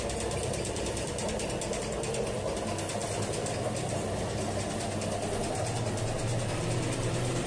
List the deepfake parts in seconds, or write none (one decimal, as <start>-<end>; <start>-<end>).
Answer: 0.4-1.2; 3.0-4.1